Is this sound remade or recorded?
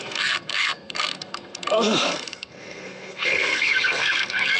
remade